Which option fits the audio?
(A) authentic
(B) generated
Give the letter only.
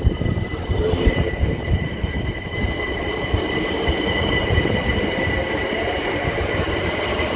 B